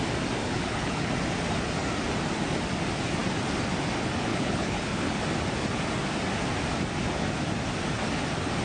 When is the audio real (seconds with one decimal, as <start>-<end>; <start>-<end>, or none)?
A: 0.0-0.4; 1.1-4.3; 5.2-8.6